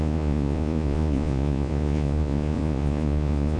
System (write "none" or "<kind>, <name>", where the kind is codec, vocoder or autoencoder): vocoder, Vocos